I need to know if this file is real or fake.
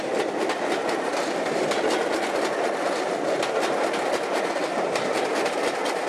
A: real